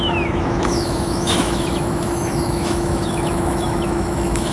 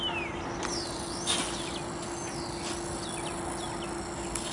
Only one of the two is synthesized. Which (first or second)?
first